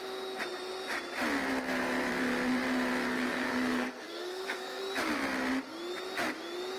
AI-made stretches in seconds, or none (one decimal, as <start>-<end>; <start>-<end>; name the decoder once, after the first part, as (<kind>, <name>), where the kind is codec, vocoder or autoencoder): 3.1-4.8 (codec, SNAC)